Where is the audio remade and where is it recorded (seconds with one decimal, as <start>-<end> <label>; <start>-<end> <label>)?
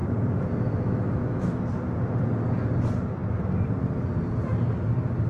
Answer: 0.0-1.6 remade; 1.6-5.3 recorded